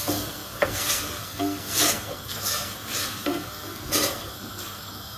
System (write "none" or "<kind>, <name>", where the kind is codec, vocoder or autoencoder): codec, SNAC